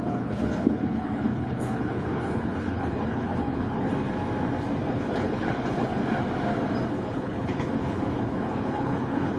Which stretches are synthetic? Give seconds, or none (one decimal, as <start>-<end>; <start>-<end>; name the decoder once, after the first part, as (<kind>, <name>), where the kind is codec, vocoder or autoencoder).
0.0-3.9 (codec, HILCodec); 4.8-6.0; 6.9-9.4

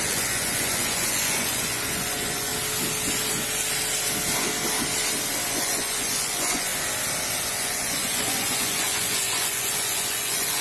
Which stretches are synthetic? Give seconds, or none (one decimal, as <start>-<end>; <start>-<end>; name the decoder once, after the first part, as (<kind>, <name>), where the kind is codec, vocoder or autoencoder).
0.0-2.5 (vocoder, Vocos); 5.5-6.7; 7.5-10.6

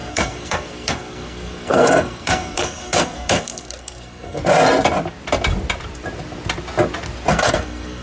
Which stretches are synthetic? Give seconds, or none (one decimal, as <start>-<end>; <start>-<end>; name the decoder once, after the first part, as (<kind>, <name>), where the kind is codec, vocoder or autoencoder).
0.0-4.4 (codec, SNAC); 7.3-8.0

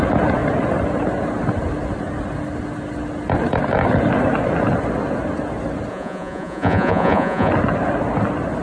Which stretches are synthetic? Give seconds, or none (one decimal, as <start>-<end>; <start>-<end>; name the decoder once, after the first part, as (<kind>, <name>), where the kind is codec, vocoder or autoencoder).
5.9-7.5 (vocoder, Vocos)

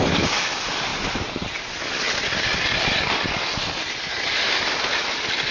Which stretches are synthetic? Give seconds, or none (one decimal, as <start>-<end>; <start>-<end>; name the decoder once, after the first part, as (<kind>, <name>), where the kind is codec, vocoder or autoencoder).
0.9-1.8 (vocoder, BigVGAN v2)

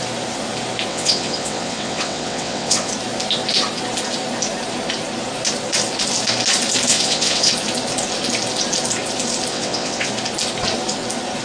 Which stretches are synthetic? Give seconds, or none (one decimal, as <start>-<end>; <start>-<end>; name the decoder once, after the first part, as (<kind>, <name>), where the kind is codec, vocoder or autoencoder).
0.9-2.9 (vocoder, WaveNeXt); 6.9-7.5; 9.5-10.1

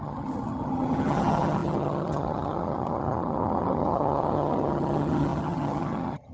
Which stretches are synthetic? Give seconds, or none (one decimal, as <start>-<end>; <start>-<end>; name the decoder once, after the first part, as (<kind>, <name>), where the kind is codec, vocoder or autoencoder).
0.0-6.3 (vocoder, HiFi-GAN)

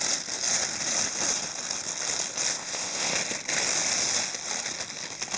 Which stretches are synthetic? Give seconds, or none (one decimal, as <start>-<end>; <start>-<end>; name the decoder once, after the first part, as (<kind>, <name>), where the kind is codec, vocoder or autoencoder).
2.5-3.1 (codec, ZipCodec)